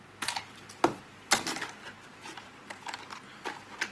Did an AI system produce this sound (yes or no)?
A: no